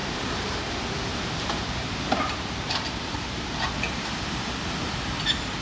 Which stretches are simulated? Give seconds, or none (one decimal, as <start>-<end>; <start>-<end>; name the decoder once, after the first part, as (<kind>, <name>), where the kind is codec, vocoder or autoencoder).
0.0-0.6 (vocoder, BigVGAN v2); 1.1-4.5